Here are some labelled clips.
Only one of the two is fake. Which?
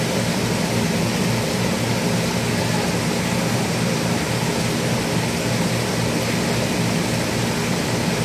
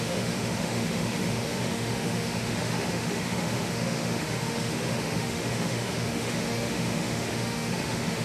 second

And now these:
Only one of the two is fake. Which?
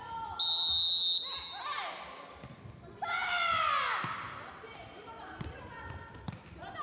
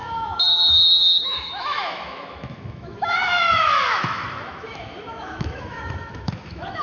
second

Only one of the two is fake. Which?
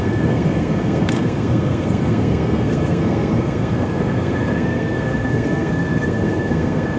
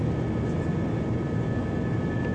first